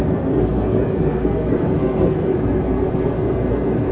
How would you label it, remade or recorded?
remade